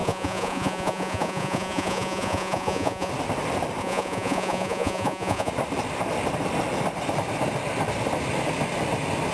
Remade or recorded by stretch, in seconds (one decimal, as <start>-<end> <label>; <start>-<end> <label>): 0.0-3.1 remade; 3.1-3.8 recorded; 3.8-5.5 remade; 5.5-9.3 recorded